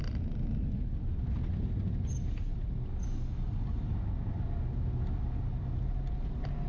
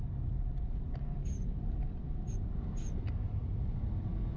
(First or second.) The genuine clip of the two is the first